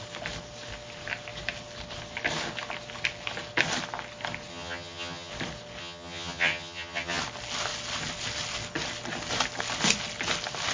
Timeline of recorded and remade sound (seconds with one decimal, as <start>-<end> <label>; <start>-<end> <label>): 0.0-4.5 recorded; 4.5-5.3 remade; 5.3-5.8 recorded; 5.8-7.2 remade; 7.2-10.7 recorded